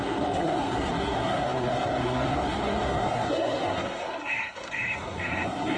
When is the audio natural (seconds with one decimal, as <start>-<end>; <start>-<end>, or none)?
none